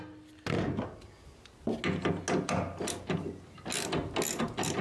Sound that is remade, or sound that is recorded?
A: recorded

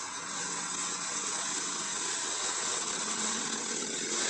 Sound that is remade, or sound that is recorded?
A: remade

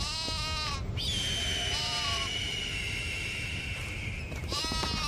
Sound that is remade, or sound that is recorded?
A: recorded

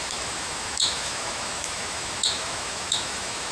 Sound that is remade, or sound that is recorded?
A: remade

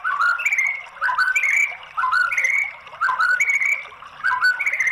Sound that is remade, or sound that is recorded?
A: recorded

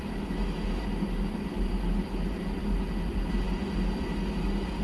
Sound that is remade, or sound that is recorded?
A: recorded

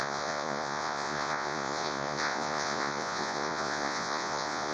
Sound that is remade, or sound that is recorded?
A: remade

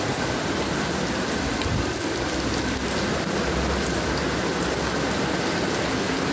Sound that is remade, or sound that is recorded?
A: recorded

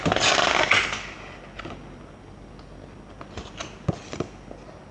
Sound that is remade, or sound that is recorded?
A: recorded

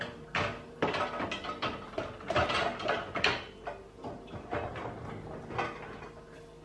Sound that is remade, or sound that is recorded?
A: recorded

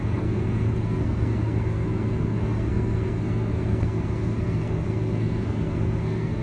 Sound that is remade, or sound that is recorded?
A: remade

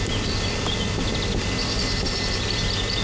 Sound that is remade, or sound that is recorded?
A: remade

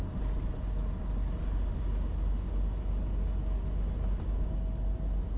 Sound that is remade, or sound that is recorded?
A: recorded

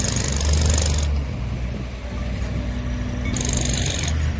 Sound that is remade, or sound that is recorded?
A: recorded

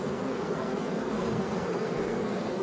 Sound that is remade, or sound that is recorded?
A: remade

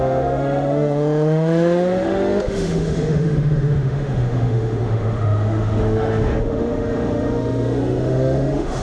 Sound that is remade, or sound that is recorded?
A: remade